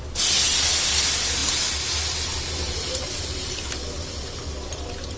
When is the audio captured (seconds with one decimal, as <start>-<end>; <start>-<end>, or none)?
0.0-5.2